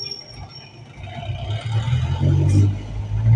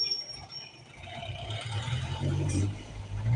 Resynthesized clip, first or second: second